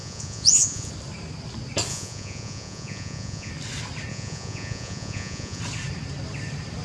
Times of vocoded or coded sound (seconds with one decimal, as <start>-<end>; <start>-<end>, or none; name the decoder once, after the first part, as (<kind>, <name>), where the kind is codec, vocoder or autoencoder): 0.0-0.9 (vocoder, Vocos); 1.9-3.5; 4.1-5.6